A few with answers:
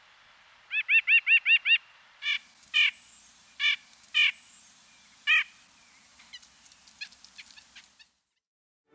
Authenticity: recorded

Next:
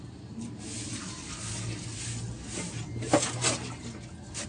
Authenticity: recorded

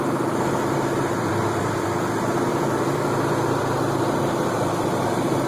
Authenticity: remade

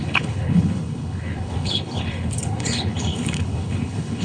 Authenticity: remade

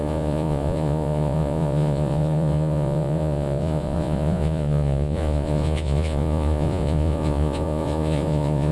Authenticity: remade